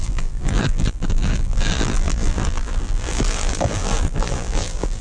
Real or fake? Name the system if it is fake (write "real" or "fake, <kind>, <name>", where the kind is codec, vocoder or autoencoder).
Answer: fake, vocoder, BigVGAN v2